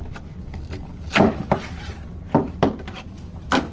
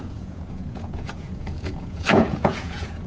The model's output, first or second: second